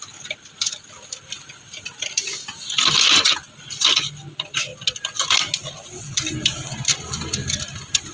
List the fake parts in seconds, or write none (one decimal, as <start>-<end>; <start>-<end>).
none